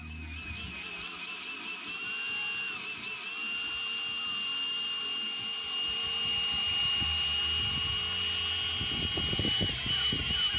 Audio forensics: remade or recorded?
recorded